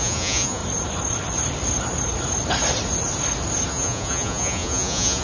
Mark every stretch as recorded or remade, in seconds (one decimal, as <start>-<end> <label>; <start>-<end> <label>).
0.0-0.6 remade; 0.6-3.7 recorded; 3.7-5.2 remade